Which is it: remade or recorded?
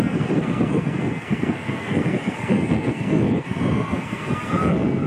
remade